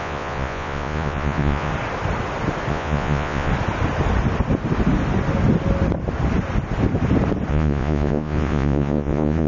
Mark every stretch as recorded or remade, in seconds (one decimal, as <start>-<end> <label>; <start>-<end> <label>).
0.0-1.7 remade; 1.7-2.7 recorded; 2.7-3.5 remade; 3.5-7.5 recorded; 7.5-9.5 remade